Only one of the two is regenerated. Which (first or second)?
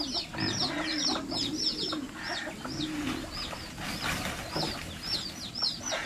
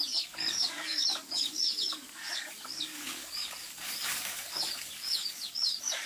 second